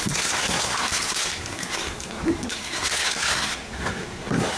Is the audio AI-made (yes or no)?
yes